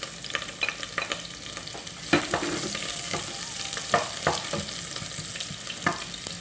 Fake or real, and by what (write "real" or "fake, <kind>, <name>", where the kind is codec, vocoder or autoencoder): real